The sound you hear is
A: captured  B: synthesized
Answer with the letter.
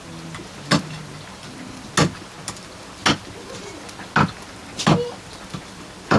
A